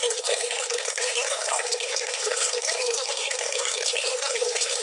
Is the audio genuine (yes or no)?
no